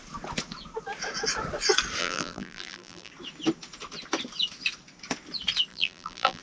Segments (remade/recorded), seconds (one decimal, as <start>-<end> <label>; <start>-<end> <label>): 0.0-2.0 recorded; 2.0-3.1 remade; 3.1-5.7 recorded; 5.7-6.4 remade